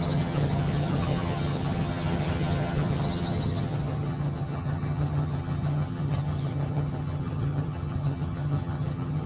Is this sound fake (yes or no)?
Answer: yes